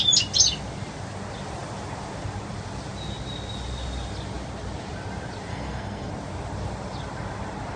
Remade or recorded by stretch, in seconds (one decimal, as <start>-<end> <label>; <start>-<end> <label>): 0.0-5.5 recorded; 5.5-6.1 remade; 6.1-7.8 recorded